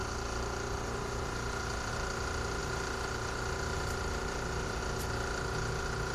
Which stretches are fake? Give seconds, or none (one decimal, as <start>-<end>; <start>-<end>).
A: 0.0-1.9; 2.6-4.8